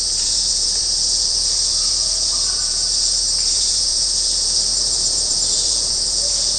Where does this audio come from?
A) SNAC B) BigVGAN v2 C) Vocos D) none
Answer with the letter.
C